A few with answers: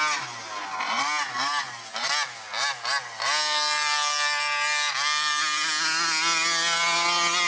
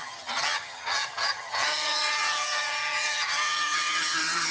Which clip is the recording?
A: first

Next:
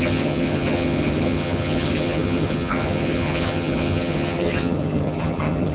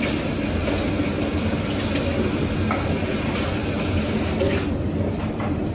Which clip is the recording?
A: second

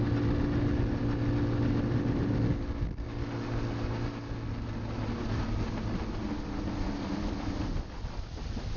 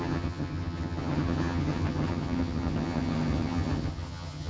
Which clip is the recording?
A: first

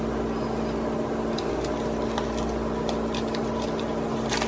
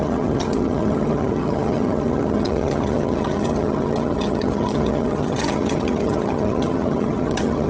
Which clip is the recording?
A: first